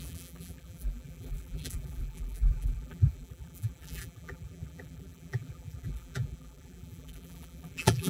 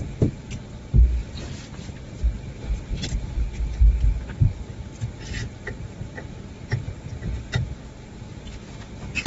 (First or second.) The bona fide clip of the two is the second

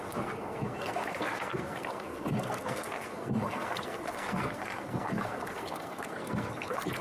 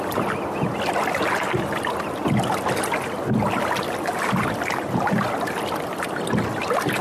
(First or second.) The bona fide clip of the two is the second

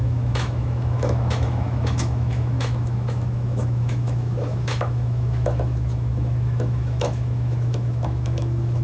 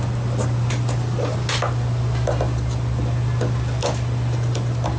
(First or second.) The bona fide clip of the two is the second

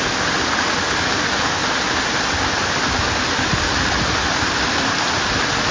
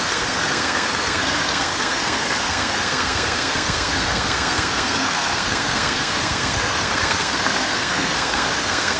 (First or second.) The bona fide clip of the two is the first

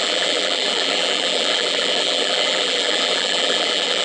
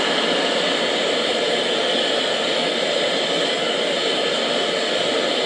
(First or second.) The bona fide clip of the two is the second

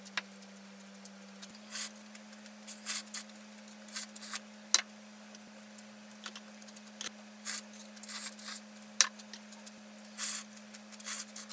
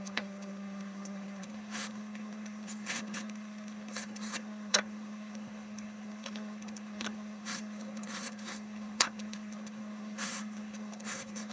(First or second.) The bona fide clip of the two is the first